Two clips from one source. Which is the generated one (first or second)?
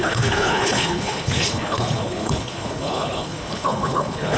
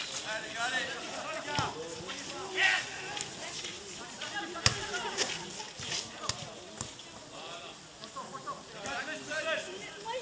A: first